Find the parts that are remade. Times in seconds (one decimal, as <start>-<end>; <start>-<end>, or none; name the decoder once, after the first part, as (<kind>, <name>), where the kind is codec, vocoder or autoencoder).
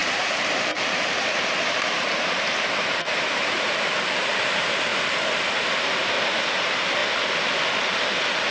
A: 0.0-4.9 (vocoder, BigVGAN v2); 6.4-7.0